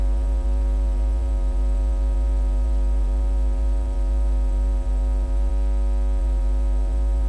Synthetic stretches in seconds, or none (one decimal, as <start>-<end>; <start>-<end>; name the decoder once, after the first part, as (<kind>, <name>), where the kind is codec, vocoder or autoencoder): 0.0-5.5 (vocoder, BigVGAN v2); 6.2-7.3